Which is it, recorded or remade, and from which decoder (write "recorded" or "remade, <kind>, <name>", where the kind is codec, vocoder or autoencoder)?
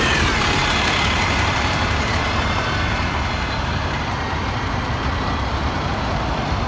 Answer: remade, vocoder, BigVGAN v2